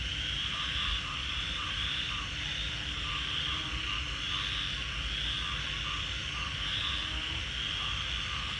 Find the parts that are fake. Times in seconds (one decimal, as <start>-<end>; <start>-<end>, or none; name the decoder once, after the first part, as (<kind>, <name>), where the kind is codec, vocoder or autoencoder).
0.9-3.6 (vocoder, BigVGAN v2)